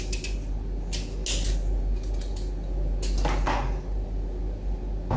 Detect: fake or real real